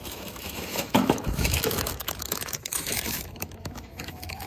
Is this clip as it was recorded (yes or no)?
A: no